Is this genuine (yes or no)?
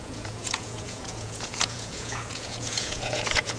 no